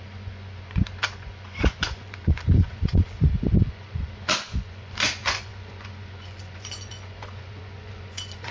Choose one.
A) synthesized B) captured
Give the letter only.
A